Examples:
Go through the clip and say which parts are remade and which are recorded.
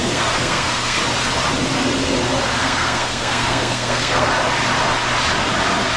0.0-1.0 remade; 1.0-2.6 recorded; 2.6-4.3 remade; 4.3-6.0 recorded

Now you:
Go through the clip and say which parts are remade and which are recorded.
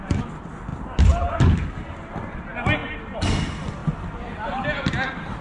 0.0-5.4 recorded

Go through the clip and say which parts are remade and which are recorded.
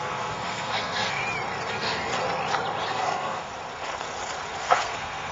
0.0-1.2 remade; 1.2-1.7 recorded; 1.7-2.1 remade; 2.1-2.9 recorded; 2.9-3.5 remade; 3.5-4.6 recorded; 4.6-5.3 remade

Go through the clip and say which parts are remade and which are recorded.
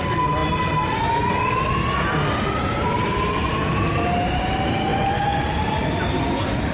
0.0-6.7 recorded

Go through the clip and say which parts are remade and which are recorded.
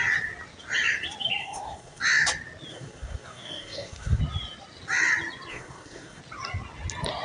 0.0-1.4 recorded; 1.4-2.0 remade; 2.0-2.7 recorded; 2.7-4.2 remade; 4.2-5.5 recorded; 5.5-6.2 remade; 6.2-7.2 recorded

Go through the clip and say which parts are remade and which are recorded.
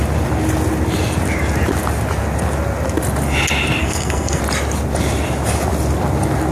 0.0-3.8 recorded; 3.8-4.4 remade; 4.4-6.5 recorded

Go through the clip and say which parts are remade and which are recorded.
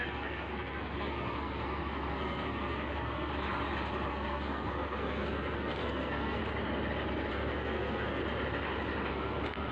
0.0-3.3 remade; 3.3-4.1 recorded; 4.1-6.4 remade; 6.4-7.3 recorded; 7.3-8.2 remade; 8.2-9.1 recorded; 9.1-9.7 remade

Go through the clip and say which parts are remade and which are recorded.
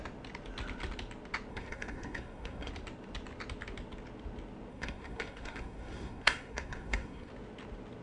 0.0-1.5 recorded; 1.5-2.7 remade; 2.7-4.7 recorded; 4.7-7.3 remade; 7.3-8.0 recorded